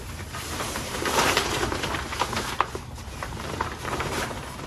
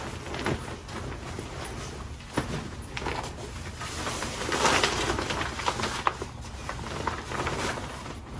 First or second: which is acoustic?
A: second